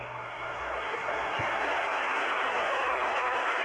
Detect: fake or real fake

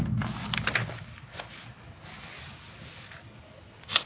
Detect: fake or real real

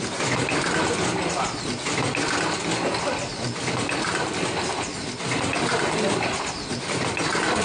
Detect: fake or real real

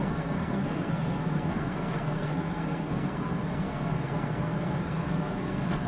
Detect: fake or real fake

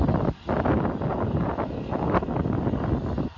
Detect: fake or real real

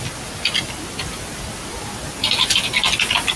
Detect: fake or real real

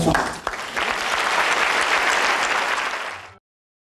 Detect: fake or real real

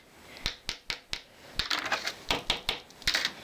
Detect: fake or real real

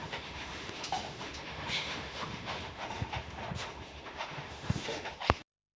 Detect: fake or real fake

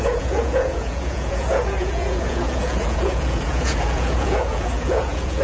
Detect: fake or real fake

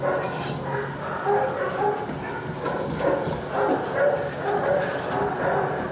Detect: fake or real real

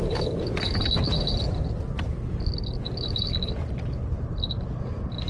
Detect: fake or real real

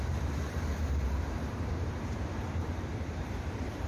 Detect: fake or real fake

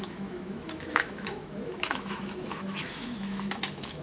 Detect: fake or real fake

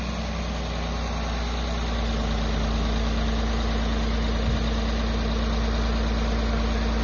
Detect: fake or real real